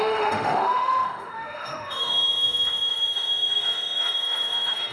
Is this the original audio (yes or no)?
no